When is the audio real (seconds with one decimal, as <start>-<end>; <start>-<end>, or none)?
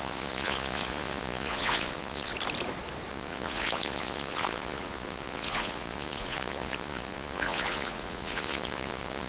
2.3-3.1